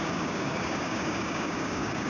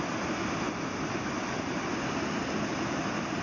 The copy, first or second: first